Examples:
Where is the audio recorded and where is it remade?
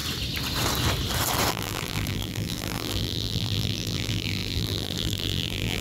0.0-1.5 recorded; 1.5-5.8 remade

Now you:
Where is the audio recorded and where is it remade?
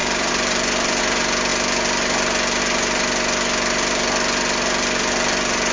0.0-1.0 remade; 1.0-5.7 recorded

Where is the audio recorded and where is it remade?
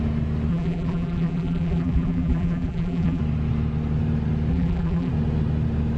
0.0-0.5 recorded; 0.5-3.2 remade; 3.2-4.5 recorded; 4.5-5.1 remade; 5.1-6.0 recorded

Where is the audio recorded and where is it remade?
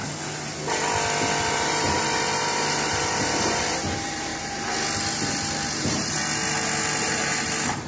0.0-1.4 recorded; 1.4-4.3 remade; 4.3-5.8 recorded; 5.8-6.2 remade; 6.2-7.0 recorded; 7.0-7.9 remade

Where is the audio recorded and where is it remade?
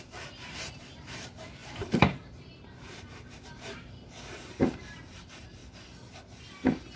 0.0-5.6 remade; 5.6-6.5 recorded; 6.5-7.0 remade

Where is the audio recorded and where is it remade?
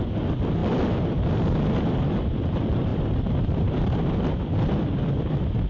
0.0-2.9 recorded; 2.9-4.4 remade; 4.4-5.7 recorded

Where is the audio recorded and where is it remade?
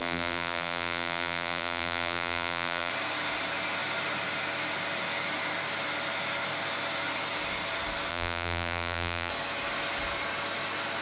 0.0-2.9 remade; 2.9-8.1 recorded; 8.1-9.3 remade; 9.3-11.0 recorded